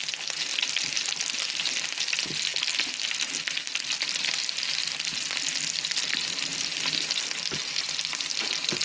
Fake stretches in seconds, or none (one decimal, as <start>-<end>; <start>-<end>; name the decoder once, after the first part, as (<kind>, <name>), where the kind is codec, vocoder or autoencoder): none

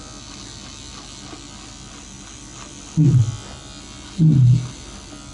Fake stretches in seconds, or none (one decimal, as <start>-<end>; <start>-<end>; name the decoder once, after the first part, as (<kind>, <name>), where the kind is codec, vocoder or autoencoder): none

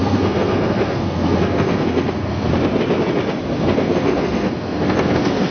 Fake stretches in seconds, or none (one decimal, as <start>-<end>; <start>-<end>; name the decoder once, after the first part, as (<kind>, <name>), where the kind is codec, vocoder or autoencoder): 0.0-2.5 (codec, SNAC); 3.6-5.5

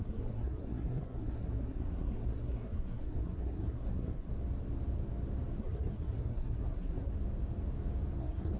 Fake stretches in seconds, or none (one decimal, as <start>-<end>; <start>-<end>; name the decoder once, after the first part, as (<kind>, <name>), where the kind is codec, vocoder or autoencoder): 0.0-4.3 (codec, SNAC); 5.6-7.1; 8.2-8.6

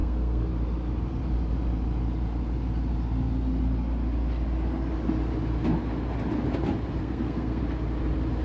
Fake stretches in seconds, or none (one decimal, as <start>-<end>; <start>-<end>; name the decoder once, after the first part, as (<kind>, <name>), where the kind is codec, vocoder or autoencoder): 0.0-0.5 (codec, SNAC); 7.0-7.6

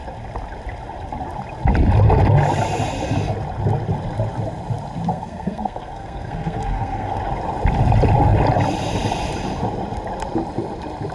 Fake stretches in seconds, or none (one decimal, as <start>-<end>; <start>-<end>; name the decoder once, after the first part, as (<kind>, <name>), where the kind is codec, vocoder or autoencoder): 5.1-7.2 (codec, SNAC)